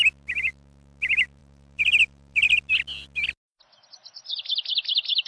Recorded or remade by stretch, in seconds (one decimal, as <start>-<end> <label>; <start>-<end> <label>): 0.0-1.4 recorded; 1.4-2.7 remade; 2.7-4.3 recorded; 4.3-5.3 remade